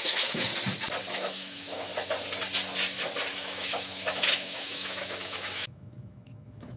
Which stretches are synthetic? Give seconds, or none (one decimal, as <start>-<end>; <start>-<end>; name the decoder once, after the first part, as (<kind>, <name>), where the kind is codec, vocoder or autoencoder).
0.0-0.5 (autoencoder, DAC-VAE); 1.1-1.9; 3.3-6.8

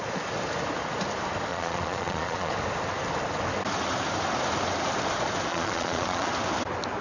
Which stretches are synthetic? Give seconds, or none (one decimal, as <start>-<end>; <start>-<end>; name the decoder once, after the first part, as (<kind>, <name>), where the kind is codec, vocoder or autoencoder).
1.5-2.5 (vocoder, Vocos); 5.5-6.3